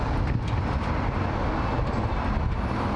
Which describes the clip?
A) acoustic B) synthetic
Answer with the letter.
A